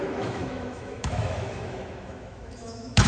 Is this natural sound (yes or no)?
no